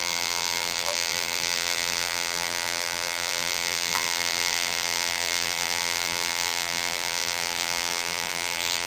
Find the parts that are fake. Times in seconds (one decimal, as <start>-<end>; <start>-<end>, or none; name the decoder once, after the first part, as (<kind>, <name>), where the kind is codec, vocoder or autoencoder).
0.0-8.9 (vocoder, BigVGAN v2)